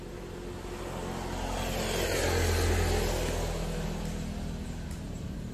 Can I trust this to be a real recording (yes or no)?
yes